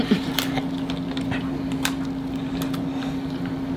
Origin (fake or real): real